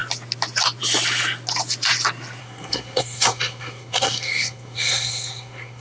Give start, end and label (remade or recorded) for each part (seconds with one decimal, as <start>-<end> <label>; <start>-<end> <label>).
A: 0.0-2.4 recorded; 2.4-5.8 remade